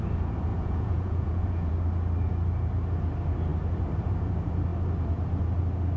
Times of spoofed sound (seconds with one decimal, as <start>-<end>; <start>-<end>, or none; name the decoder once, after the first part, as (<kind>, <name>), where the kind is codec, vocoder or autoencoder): 0.5-1.7 (vocoder, Vocos)